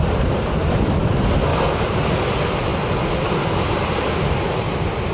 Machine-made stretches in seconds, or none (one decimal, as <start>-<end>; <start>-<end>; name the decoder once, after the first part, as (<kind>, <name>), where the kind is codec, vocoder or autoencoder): none